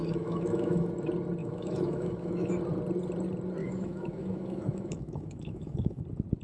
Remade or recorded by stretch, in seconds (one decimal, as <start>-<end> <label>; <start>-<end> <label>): 0.0-0.9 remade; 0.9-1.4 recorded; 1.4-2.5 remade; 2.5-3.6 recorded; 3.6-6.0 remade; 6.0-6.4 recorded